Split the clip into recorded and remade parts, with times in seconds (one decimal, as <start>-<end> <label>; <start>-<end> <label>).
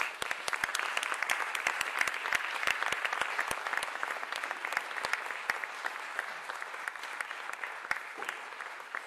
0.0-9.1 recorded